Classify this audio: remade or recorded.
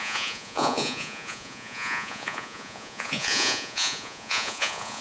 remade